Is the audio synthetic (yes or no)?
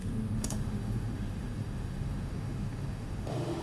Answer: yes